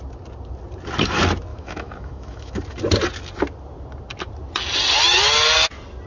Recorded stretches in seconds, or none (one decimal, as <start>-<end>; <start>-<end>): 0.0-1.5; 2.6-6.1